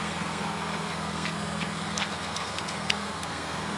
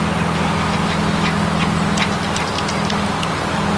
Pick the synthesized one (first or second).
first